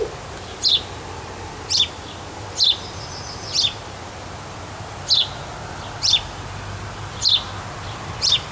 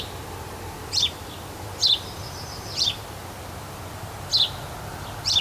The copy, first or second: second